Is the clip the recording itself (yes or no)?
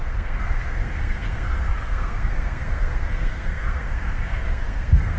no